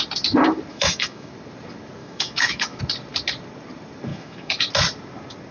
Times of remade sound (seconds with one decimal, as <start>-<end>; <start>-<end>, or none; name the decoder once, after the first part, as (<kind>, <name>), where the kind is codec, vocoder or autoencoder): 0.7-1.3 (autoencoder, DAC-VAE); 2.0-2.8; 4.1-4.7